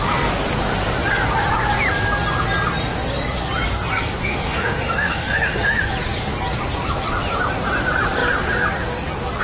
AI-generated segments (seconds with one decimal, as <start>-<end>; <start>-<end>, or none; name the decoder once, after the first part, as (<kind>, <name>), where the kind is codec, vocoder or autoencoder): 4.2-5.8 (autoencoder, DAC-VAE)